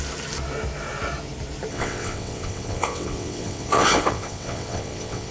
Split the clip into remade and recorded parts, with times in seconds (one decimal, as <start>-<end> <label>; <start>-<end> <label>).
0.0-1.7 recorded; 1.7-5.3 remade